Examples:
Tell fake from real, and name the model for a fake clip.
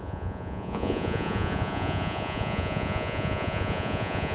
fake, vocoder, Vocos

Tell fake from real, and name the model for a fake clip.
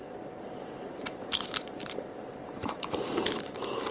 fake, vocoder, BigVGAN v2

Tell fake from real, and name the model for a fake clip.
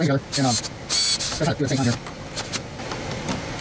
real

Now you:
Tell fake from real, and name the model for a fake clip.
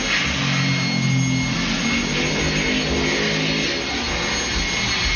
real